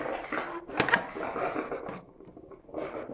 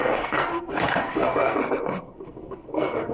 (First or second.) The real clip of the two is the first